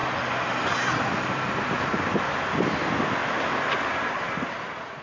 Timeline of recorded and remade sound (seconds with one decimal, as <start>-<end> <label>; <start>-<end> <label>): 0.0-3.2 recorded; 3.2-5.0 remade